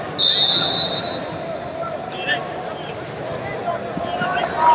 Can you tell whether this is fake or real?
real